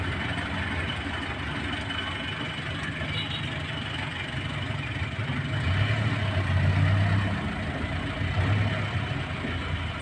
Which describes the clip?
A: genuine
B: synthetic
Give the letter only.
A